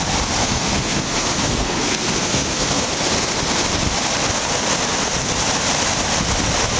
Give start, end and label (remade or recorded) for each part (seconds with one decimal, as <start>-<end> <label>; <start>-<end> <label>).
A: 0.0-0.4 recorded; 0.4-2.9 remade; 2.9-6.8 recorded